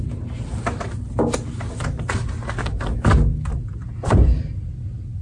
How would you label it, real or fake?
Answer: real